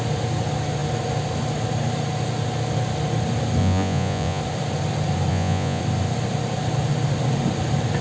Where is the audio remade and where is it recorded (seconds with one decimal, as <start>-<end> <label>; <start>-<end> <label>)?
0.0-3.6 recorded; 3.6-4.4 remade; 4.4-5.3 recorded; 5.3-5.8 remade; 5.8-8.0 recorded